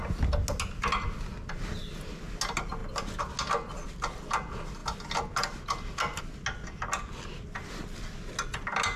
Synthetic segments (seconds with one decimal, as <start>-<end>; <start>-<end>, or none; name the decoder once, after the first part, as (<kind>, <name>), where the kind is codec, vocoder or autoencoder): none